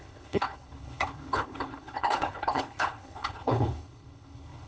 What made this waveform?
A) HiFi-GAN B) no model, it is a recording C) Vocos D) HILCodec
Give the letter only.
D